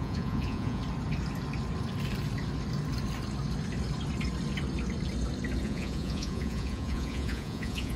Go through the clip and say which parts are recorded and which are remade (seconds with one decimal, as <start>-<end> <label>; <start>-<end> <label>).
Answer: 0.0-0.8 remade; 0.8-5.6 recorded; 5.6-8.0 remade